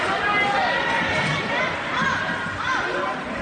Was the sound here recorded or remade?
recorded